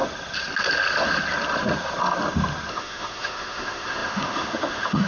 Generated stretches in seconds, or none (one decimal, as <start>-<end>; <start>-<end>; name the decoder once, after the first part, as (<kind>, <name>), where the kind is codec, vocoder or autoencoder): 2.7-5.1 (autoencoder, DAC-VAE)